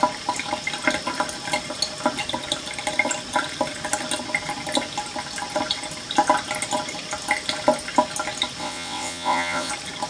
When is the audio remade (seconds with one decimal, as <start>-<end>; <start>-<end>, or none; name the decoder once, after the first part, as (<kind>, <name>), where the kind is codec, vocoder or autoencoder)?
8.6-9.7 (vocoder, WaveNeXt)